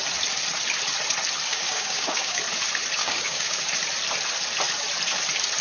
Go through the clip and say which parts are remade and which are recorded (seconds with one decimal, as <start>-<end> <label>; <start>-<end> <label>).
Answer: 0.0-1.5 recorded; 1.5-2.4 remade; 2.4-3.0 recorded; 3.0-3.6 remade; 3.6-5.6 recorded